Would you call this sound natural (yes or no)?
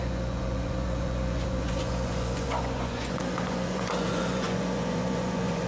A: no